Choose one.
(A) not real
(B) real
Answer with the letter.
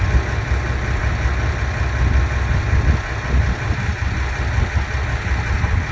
B